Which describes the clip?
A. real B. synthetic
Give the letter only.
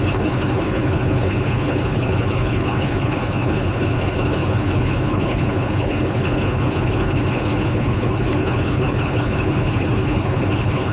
B